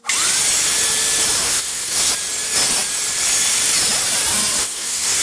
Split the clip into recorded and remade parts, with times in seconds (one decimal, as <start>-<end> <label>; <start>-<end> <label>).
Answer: 0.0-1.4 recorded; 1.4-2.1 remade; 2.1-4.6 recorded; 4.6-5.2 remade